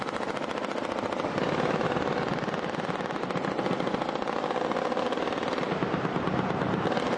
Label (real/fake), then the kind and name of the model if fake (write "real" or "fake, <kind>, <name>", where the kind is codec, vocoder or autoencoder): real